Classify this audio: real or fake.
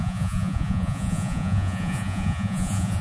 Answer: fake